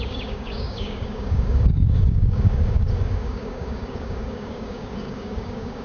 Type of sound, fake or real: fake